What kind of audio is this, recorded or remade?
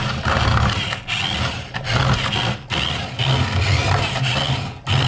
recorded